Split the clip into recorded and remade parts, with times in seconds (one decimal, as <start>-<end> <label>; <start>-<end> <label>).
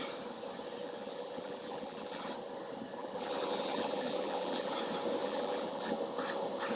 0.0-0.8 recorded; 0.8-2.3 remade; 2.3-3.0 recorded; 3.0-4.7 remade; 4.7-5.2 recorded; 5.2-5.9 remade; 5.9-6.8 recorded